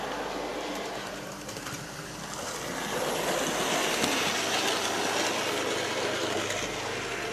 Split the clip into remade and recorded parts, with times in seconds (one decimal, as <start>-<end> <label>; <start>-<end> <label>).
0.0-7.3 recorded

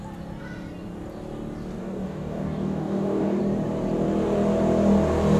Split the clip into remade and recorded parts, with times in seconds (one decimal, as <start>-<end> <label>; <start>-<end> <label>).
0.0-1.8 recorded; 1.8-3.4 remade; 3.4-5.4 recorded